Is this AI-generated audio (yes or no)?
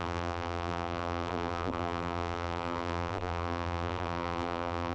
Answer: yes